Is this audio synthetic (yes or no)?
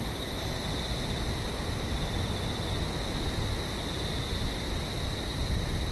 no